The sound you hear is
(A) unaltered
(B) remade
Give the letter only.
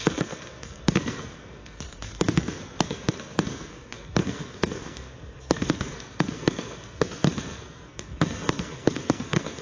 B